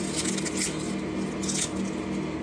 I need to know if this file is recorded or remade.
recorded